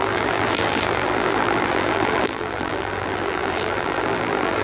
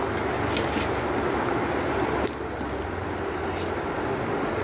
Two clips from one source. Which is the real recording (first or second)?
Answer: second